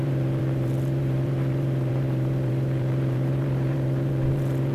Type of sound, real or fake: fake